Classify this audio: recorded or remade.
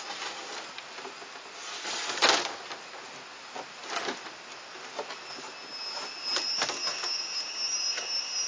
recorded